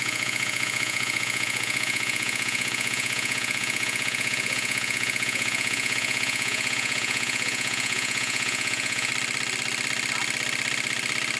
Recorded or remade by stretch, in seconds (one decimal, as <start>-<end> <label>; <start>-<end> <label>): 0.0-9.1 remade; 9.1-11.4 recorded

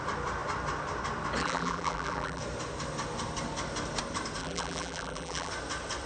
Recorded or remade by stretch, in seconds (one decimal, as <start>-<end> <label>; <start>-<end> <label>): 0.0-1.4 recorded; 1.4-2.4 remade; 2.4-4.4 recorded; 4.4-5.5 remade; 5.5-6.1 recorded

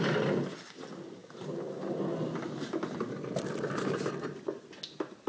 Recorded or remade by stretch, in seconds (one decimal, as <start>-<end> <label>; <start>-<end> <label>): 0.0-5.3 recorded

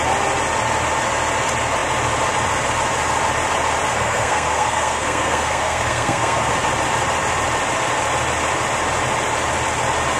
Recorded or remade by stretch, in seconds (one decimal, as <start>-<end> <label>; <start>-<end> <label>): 0.0-3.9 recorded; 3.9-6.5 remade; 6.5-10.2 recorded

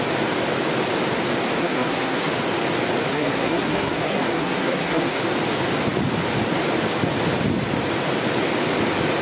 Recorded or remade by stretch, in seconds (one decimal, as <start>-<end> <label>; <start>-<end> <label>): 0.0-1.6 recorded; 1.6-2.3 remade; 2.3-3.1 recorded; 3.1-5.2 remade; 5.2-9.2 recorded

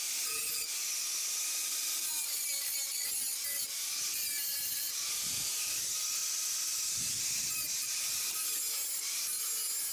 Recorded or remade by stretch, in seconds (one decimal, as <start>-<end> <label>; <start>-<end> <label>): 0.0-7.8 recorded; 7.8-8.6 remade; 8.6-9.9 recorded

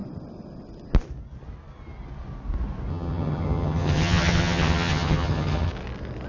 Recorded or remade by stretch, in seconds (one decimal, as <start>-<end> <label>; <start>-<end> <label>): 0.0-2.9 recorded; 2.9-5.7 remade; 5.7-6.3 recorded

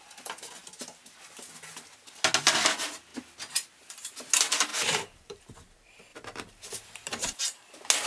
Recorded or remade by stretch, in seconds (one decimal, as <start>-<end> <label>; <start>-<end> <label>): 0.0-4.7 recorded; 4.7-5.4 remade; 5.4-6.1 recorded; 6.1-7.4 remade; 7.4-8.1 recorded